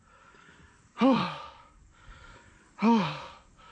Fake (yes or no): yes